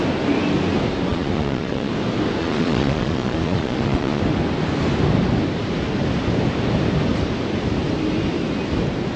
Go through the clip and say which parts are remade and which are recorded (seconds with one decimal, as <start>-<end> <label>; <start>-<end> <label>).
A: 0.0-1.1 recorded; 1.1-1.9 remade; 1.9-2.4 recorded; 2.4-4.2 remade; 4.2-9.2 recorded